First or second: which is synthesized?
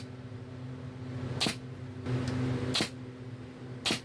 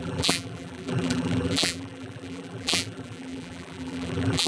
second